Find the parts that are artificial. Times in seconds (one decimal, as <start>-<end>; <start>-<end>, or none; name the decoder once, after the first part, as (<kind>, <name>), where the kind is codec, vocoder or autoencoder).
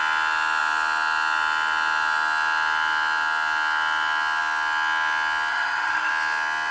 5.5-6.1 (vocoder, HiFi-GAN)